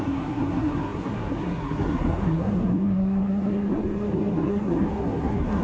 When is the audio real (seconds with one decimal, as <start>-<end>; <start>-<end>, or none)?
none